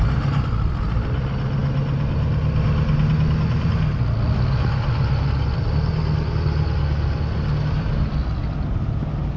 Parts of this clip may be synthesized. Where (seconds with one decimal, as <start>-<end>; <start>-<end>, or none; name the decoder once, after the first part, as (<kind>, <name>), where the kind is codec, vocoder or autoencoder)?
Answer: none